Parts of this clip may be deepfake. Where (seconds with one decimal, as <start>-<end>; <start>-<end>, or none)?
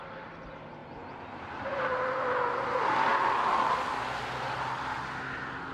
none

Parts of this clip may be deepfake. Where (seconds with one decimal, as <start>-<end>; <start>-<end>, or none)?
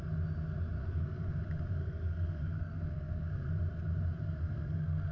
0.8-1.4; 1.8-3.5; 4.2-5.1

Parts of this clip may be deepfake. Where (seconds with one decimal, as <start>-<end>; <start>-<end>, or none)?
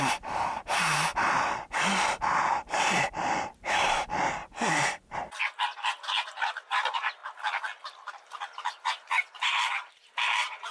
0.0-1.1; 2.8-7.2; 8.1-10.7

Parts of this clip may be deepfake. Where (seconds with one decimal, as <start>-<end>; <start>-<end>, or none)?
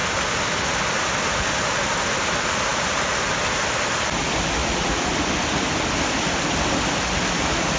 4.6-5.1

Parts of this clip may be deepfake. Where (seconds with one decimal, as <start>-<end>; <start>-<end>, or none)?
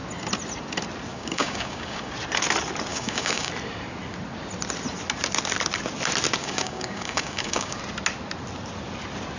1.1-2.1; 2.9-3.5; 6.4-7.8